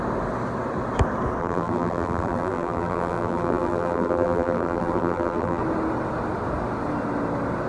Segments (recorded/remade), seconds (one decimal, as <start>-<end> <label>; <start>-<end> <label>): 0.0-1.4 recorded; 1.4-5.6 remade; 5.6-7.7 recorded